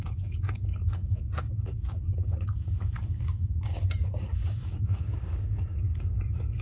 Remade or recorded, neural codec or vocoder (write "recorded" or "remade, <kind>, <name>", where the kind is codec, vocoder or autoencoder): remade, codec, DAC